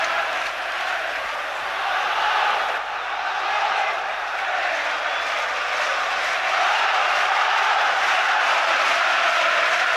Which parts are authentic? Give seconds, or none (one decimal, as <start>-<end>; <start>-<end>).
0.0-10.0